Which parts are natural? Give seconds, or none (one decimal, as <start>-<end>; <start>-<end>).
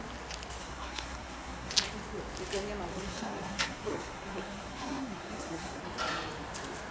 0.0-0.6; 1.7-2.9; 5.8-6.9